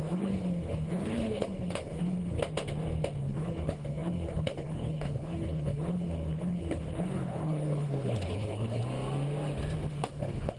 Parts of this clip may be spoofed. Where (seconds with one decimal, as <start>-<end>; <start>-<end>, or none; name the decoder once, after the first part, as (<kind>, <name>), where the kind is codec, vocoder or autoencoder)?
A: 0.0-2.4 (codec, HILCodec); 3.2-8.8; 9.9-10.6